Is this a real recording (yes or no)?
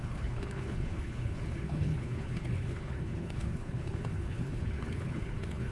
no